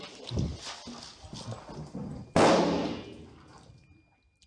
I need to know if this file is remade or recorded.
recorded